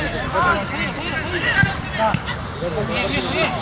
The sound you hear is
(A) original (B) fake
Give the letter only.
A